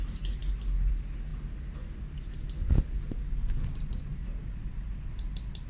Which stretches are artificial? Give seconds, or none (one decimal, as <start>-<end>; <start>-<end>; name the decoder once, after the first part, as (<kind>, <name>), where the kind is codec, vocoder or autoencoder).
none